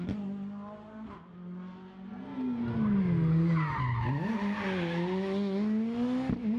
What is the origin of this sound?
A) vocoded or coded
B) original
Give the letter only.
B